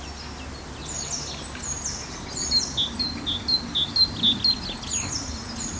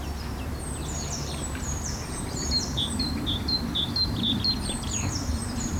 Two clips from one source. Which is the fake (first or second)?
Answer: second